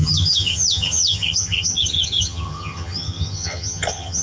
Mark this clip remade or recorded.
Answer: remade